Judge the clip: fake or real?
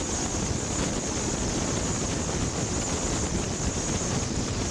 real